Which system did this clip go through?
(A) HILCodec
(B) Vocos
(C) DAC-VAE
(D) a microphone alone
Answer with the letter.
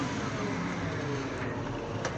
D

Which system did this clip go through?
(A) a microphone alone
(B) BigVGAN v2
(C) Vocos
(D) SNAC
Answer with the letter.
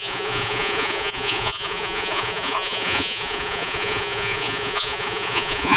C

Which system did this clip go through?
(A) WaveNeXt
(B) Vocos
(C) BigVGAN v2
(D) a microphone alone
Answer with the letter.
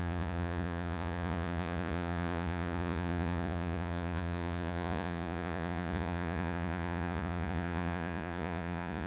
B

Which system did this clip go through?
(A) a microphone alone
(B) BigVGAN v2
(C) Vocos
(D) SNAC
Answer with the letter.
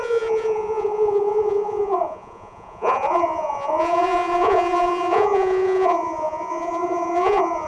C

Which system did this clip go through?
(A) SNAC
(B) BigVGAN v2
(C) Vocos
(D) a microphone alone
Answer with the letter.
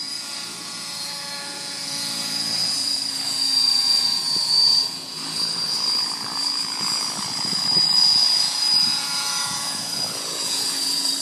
C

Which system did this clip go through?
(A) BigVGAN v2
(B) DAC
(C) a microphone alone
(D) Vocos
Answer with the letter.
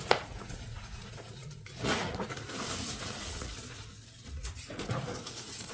D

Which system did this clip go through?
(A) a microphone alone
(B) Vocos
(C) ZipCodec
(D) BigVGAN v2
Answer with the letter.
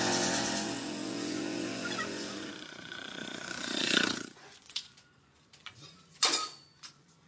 B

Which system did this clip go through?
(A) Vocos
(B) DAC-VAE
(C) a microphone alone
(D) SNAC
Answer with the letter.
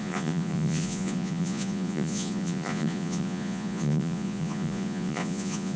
A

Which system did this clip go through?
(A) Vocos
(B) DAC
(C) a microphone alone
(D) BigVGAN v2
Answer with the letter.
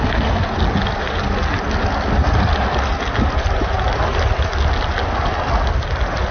C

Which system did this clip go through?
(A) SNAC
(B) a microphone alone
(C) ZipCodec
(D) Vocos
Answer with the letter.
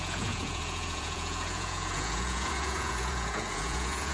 D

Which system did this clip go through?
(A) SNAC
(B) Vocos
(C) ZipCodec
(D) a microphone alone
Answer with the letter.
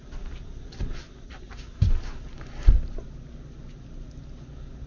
D